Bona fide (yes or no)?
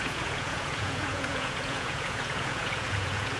no